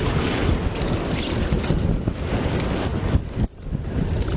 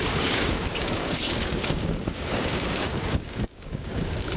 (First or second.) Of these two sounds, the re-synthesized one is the second